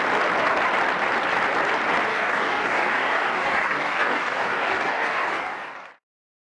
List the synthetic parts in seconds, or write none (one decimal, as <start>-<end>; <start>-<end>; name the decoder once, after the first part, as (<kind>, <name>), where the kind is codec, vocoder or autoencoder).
2.1-5.9 (codec, DAC)